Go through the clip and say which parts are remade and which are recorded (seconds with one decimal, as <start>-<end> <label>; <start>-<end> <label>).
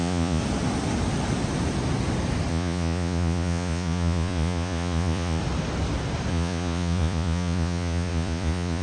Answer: 0.0-0.4 remade; 0.4-2.5 recorded; 2.5-5.4 remade; 5.4-6.3 recorded; 6.3-8.8 remade